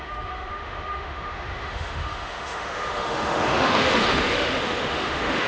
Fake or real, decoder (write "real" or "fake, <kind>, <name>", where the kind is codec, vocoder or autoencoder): fake, autoencoder, DAC-VAE